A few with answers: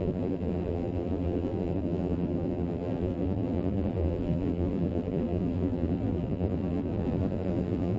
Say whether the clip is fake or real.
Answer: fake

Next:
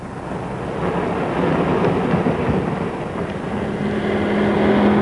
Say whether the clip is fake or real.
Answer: real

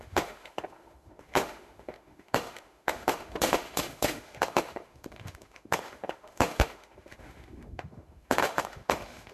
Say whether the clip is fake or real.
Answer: fake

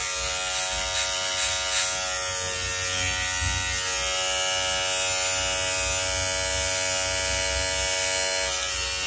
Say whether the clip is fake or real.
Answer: real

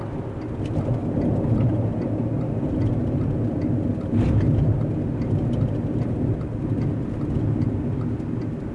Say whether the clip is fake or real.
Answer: real